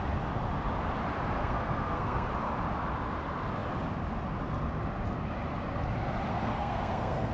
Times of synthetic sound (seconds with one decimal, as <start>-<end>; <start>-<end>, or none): 1.4-2.3; 6.3-7.3